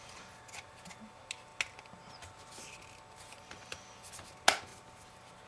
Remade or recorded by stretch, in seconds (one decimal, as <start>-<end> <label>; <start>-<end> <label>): 0.0-5.5 recorded